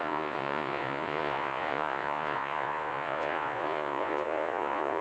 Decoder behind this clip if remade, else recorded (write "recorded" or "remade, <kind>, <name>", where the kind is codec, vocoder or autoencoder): remade, vocoder, Vocos